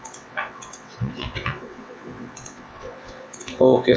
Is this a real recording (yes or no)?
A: no